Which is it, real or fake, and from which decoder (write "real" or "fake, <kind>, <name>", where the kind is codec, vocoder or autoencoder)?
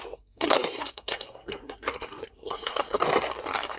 fake, codec, SNAC